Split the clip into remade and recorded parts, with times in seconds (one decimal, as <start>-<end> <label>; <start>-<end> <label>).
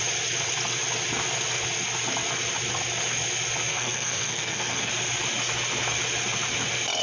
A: 0.0-3.7 recorded; 3.7-4.9 remade; 4.9-7.0 recorded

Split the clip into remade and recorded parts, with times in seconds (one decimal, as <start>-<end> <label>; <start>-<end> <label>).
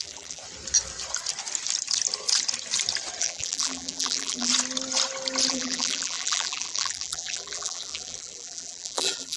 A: 0.0-0.4 remade; 0.4-3.2 recorded; 3.2-4.5 remade; 4.5-5.5 recorded; 5.5-9.4 remade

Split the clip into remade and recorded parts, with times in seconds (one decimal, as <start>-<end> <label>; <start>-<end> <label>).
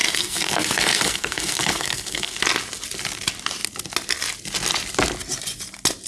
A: 0.0-2.4 remade; 2.4-6.1 recorded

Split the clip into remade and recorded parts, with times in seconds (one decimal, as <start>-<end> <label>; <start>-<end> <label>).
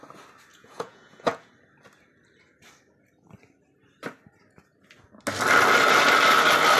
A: 0.0-0.5 recorded; 0.5-1.5 remade; 1.5-6.8 recorded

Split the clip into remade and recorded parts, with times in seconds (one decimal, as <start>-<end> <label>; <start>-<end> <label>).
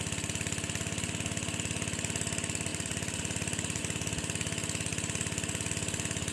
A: 0.0-2.7 recorded; 2.7-3.8 remade; 3.8-6.3 recorded